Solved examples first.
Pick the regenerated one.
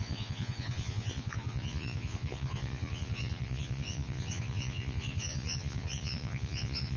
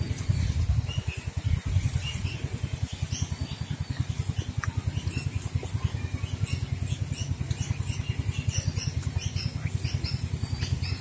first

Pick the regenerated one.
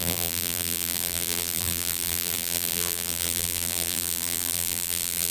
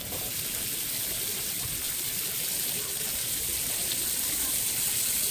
first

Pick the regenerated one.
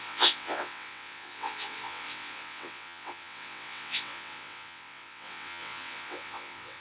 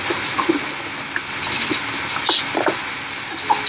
first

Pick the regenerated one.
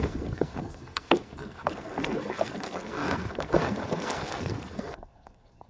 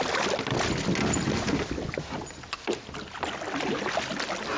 first